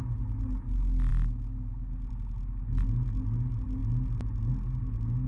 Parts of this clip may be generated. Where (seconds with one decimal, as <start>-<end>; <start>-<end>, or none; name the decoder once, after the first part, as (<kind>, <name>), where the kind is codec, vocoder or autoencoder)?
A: none

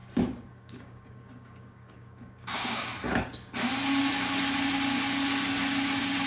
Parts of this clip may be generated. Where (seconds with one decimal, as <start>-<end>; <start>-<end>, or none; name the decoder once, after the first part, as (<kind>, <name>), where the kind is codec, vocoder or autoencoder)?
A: 0.5-2.9 (codec, DAC)

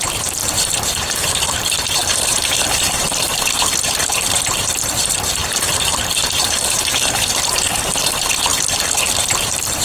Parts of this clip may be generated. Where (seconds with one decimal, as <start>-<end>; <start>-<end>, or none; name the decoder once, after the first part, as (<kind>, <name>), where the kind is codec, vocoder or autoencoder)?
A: 0.0-8.5 (vocoder, BigVGAN v2); 9.2-9.8

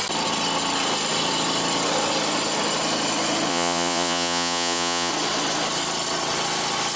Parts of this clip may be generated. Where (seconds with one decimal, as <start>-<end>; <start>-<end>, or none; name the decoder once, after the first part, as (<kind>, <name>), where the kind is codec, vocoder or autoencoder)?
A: 3.5-5.1 (vocoder, Vocos)

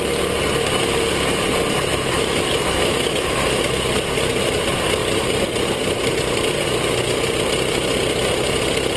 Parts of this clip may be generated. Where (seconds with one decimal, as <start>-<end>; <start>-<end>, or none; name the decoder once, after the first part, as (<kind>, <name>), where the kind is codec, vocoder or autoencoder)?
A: 1.9-3.6 (autoencoder, DAC-VAE)

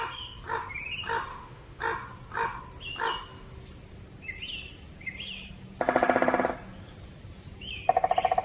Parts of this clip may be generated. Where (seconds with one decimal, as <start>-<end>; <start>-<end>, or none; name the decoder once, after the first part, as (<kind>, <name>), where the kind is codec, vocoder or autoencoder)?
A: 1.3-1.8 (autoencoder, DAC-VAE)

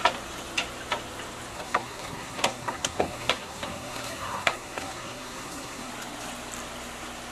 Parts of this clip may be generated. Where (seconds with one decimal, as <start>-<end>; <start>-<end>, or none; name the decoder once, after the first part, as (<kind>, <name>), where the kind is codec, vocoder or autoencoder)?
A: 1.5-5.9 (codec, SNAC)